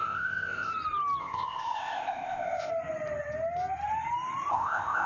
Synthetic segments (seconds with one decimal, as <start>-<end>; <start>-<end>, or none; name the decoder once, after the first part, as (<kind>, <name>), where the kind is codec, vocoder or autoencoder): 0.0-0.7 (codec, ZipCodec); 1.2-2.7; 4.5-5.1